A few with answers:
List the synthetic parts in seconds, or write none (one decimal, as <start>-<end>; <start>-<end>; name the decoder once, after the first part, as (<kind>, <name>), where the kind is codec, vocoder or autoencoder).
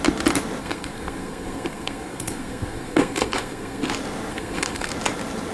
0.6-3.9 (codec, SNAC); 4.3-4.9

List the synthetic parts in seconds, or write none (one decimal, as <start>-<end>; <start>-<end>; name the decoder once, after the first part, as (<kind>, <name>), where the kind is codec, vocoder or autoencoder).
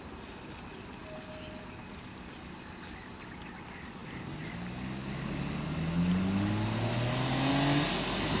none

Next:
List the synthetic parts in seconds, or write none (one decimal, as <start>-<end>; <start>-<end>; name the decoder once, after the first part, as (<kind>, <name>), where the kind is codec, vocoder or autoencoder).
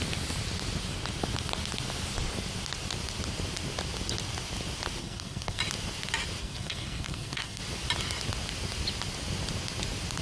5.0-5.6 (codec, SNAC); 6.4-7.6